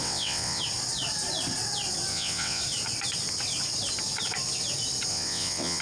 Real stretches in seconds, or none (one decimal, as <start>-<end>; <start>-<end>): 0.6-2.1; 2.6-5.1